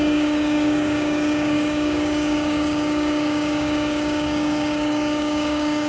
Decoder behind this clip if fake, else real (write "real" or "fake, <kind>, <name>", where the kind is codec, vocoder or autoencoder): fake, codec, DAC